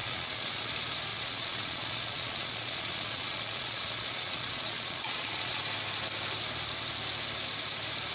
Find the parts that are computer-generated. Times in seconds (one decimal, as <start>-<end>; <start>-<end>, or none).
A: 0.0-0.7; 1.1-5.6